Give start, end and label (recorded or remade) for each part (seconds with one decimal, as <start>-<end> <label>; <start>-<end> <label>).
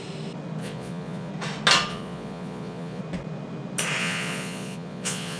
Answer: 0.0-0.6 recorded; 0.6-1.3 remade; 1.3-1.9 recorded; 1.9-3.0 remade; 3.0-4.0 recorded; 4.0-5.4 remade